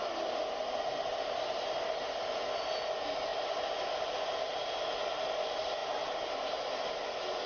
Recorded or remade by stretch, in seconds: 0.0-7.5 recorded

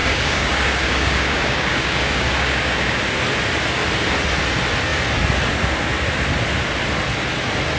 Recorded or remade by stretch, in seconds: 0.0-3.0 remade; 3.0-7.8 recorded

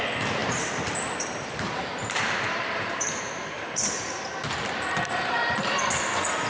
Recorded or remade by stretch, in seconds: 0.0-0.4 recorded; 0.4-3.9 remade; 3.9-6.5 recorded

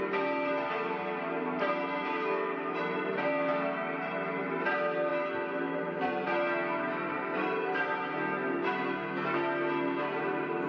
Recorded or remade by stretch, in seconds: 0.0-10.7 recorded

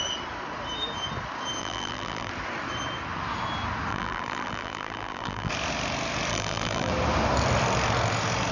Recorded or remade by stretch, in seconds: 0.0-1.6 recorded; 1.6-2.3 remade; 2.3-3.9 recorded; 3.9-5.5 remade; 5.5-6.3 recorded; 6.3-6.9 remade; 6.9-8.5 recorded

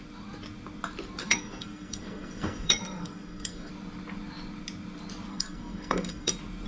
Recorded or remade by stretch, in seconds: 0.0-1.2 recorded; 1.2-3.7 remade; 3.7-5.3 recorded; 5.3-6.3 remade; 6.3-6.7 recorded

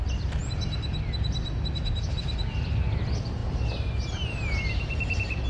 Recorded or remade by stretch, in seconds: 0.0-3.4 recorded; 3.4-5.5 remade

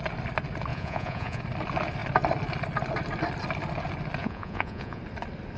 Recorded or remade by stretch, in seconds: 0.0-0.7 recorded; 0.7-1.4 remade; 1.4-4.2 recorded; 4.2-5.0 remade; 5.0-5.6 recorded